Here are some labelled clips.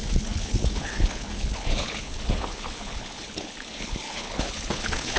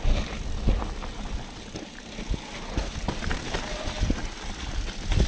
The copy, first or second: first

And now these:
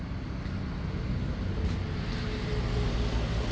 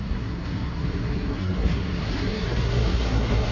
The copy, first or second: second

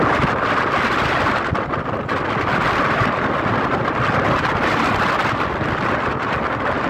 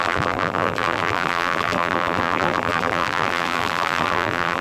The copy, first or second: second